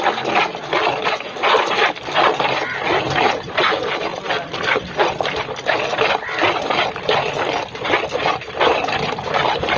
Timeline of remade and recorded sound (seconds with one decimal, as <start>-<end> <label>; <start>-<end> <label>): 0.0-9.8 recorded